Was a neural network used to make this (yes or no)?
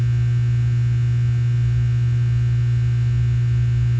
no